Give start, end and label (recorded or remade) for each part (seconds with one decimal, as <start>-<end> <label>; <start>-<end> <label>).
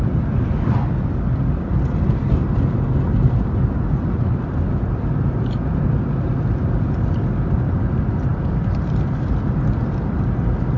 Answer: 0.0-10.8 recorded